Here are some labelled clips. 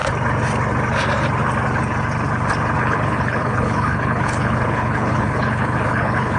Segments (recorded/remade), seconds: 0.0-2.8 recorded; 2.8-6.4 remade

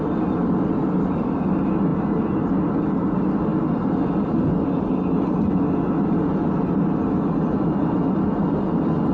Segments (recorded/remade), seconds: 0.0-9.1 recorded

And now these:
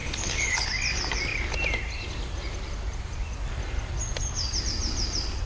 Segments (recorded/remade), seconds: 0.0-0.7 remade; 0.7-5.5 recorded

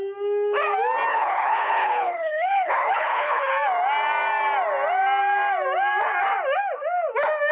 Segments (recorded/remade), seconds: 0.0-1.1 recorded; 1.1-3.5 remade; 3.5-7.5 recorded